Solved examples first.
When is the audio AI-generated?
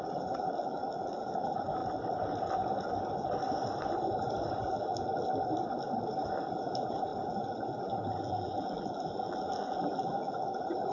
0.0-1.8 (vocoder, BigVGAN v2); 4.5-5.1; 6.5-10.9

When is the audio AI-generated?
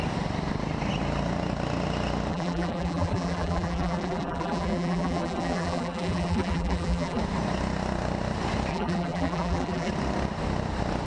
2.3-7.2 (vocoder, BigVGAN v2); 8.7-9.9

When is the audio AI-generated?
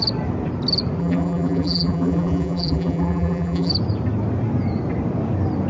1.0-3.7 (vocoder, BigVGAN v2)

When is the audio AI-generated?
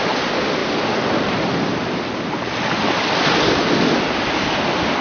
none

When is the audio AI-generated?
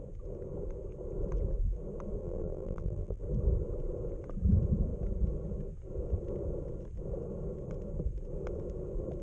2.2-3.2 (vocoder, BigVGAN v2)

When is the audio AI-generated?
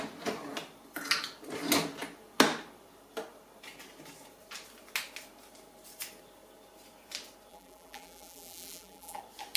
7.5-9.2 (vocoder, BigVGAN v2)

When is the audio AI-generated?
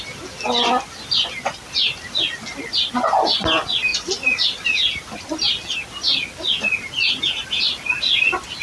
none